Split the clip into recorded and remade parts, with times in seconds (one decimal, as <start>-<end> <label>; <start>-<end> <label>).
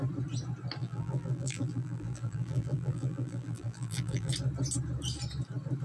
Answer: 0.0-0.8 recorded; 0.8-4.3 remade; 4.3-5.8 recorded